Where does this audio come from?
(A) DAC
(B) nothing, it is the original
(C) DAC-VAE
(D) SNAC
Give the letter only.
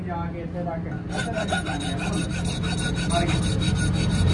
B